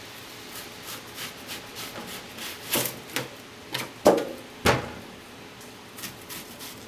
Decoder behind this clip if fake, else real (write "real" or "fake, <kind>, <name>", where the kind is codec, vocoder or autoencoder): real